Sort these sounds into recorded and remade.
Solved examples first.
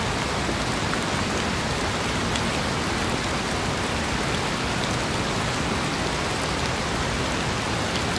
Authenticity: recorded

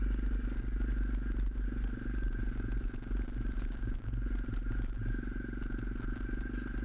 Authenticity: recorded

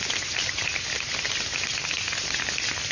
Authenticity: recorded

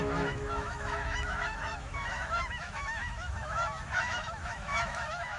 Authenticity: remade